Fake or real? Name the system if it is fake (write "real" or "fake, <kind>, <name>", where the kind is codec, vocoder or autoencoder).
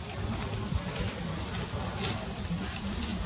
real